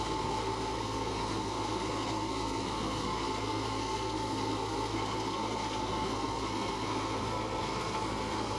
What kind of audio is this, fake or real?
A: fake